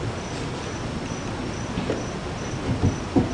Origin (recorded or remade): recorded